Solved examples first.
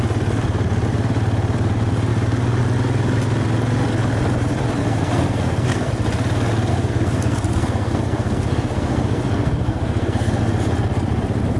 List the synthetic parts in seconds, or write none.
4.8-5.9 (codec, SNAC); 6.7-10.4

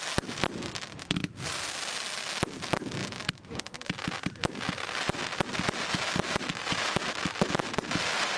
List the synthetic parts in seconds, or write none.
none